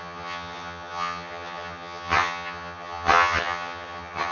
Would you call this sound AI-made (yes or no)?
yes